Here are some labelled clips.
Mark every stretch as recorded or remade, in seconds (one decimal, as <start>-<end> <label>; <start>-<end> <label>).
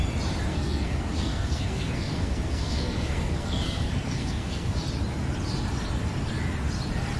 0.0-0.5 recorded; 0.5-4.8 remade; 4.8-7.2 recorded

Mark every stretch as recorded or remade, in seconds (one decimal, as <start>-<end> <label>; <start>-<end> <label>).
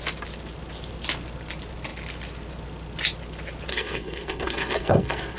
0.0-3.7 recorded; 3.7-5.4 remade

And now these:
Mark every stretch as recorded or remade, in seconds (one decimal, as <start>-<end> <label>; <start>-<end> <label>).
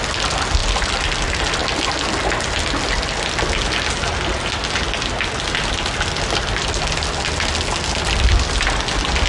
0.0-9.3 recorded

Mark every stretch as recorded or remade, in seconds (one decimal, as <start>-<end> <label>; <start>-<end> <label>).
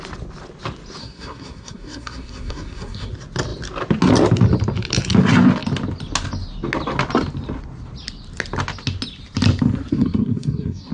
0.0-1.0 recorded; 1.0-3.1 remade; 3.1-9.9 recorded; 9.9-10.9 remade